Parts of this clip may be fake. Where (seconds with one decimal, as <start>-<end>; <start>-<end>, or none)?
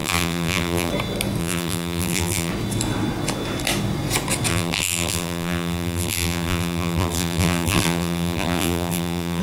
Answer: 0.0-0.9; 1.4-2.5; 4.5-9.4